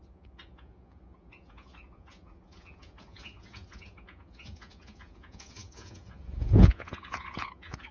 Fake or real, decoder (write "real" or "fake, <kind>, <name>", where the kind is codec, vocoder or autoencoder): fake, vocoder, Vocos